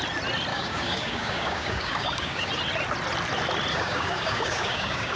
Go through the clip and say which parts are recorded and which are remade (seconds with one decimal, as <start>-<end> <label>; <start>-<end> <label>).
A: 0.0-0.5 recorded; 0.5-2.5 remade; 2.5-3.7 recorded; 3.7-5.2 remade